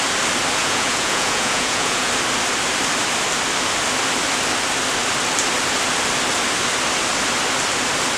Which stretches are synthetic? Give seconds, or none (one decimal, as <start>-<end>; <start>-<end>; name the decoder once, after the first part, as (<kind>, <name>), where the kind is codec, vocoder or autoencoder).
0.6-2.1 (vocoder, Vocos)